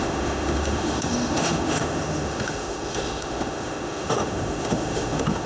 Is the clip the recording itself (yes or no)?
no